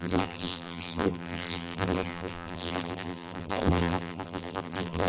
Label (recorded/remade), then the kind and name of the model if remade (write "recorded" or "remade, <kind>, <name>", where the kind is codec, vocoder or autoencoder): remade, vocoder, BigVGAN v2